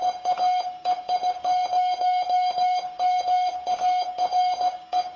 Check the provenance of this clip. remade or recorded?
remade